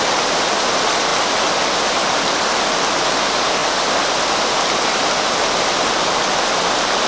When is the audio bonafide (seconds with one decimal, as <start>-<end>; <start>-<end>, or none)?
1.1-1.7; 3.6-4.4